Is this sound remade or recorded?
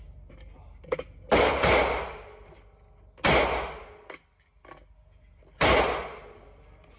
recorded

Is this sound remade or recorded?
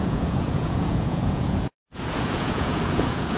remade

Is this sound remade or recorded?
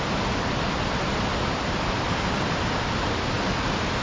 recorded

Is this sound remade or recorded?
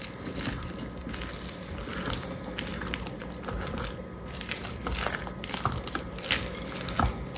recorded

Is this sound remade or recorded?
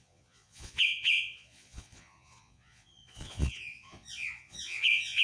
remade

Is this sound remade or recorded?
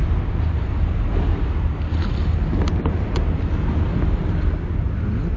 recorded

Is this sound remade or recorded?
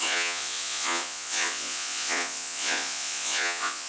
remade